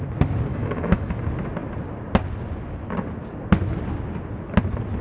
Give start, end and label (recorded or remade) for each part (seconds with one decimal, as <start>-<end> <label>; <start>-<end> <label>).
0.0-0.5 recorded; 0.5-1.2 remade; 1.2-5.0 recorded